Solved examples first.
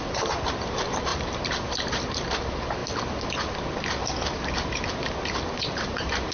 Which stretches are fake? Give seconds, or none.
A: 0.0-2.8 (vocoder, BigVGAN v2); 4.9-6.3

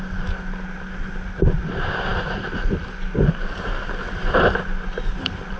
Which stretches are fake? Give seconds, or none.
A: none

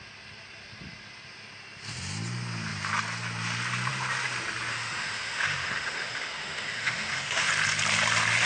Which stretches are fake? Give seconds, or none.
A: 4.7-7.5 (autoencoder, DAC-VAE)

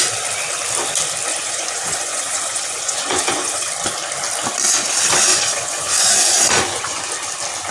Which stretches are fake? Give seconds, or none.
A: 1.3-3.7 (vocoder, Vocos); 5.3-7.0

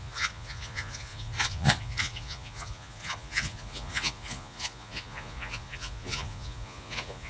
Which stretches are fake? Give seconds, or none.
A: 0.0-7.3 (vocoder, Vocos)

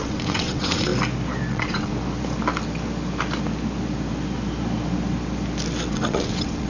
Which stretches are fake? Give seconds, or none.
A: 0.0-0.9 (vocoder, WaveNeXt); 1.5-1.9; 5.9-6.7